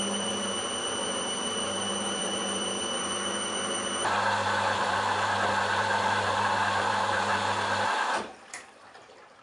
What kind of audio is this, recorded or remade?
remade